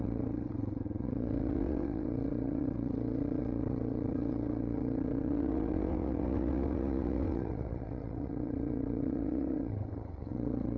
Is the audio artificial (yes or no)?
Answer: yes